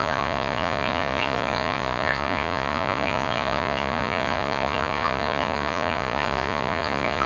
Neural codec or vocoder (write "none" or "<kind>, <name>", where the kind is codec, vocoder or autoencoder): vocoder, Vocos